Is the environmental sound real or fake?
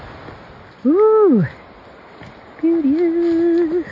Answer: real